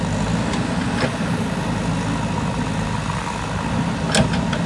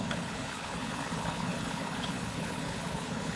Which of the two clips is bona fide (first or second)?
first